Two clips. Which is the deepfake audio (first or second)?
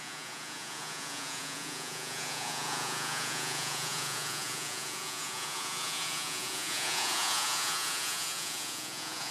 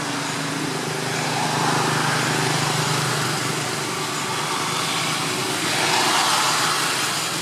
first